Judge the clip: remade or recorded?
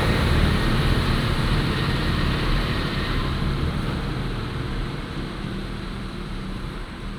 remade